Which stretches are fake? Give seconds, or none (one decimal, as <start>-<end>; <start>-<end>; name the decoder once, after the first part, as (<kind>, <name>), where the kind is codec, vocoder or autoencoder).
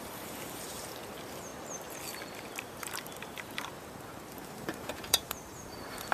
0.0-1.5 (vocoder, BigVGAN v2); 2.6-3.7; 4.3-6.1